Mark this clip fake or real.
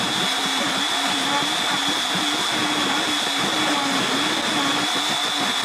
real